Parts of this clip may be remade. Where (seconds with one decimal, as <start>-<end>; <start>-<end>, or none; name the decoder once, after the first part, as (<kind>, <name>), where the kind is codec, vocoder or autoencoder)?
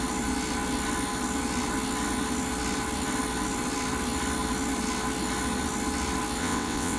6.4-7.0 (vocoder, WaveNeXt)